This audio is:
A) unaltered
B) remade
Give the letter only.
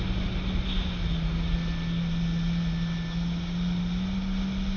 A